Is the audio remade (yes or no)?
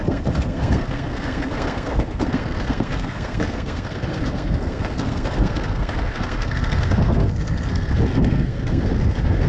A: yes